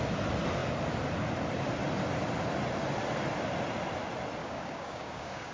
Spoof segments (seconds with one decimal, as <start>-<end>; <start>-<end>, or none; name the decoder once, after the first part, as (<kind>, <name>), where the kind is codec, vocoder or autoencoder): 4.4-5.5 (codec, DAC)